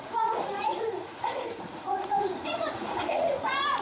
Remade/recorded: remade